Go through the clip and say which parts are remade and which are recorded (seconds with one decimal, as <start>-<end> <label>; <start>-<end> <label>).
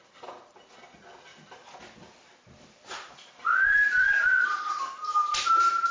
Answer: 0.0-5.9 recorded